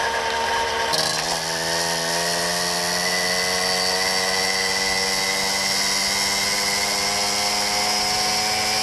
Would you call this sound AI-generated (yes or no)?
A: no